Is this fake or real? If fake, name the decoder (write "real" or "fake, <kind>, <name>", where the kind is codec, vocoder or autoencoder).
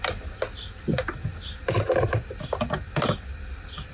real